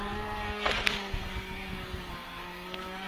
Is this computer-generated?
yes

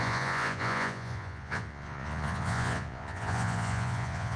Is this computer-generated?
yes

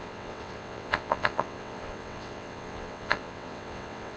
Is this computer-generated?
yes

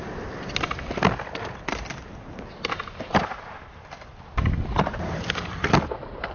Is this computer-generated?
yes